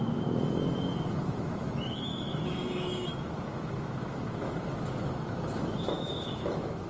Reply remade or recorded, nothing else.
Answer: remade